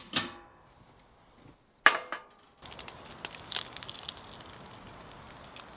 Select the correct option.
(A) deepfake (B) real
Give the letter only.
B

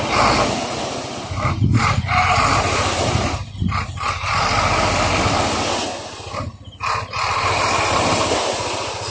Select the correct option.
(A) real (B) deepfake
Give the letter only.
A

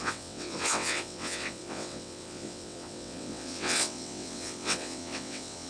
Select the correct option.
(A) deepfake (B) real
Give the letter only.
A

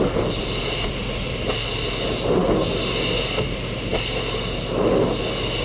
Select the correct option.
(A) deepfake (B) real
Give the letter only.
B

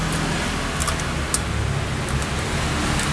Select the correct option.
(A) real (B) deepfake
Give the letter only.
A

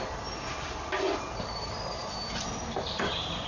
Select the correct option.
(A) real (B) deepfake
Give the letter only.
A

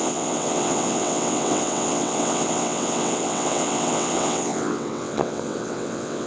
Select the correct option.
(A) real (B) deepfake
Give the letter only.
B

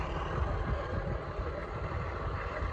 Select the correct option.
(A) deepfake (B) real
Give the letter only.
B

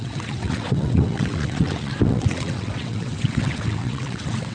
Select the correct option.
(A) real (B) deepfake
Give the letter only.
B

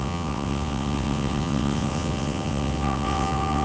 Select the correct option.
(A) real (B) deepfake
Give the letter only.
B